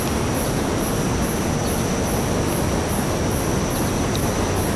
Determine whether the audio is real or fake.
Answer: real